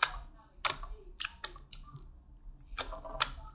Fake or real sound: real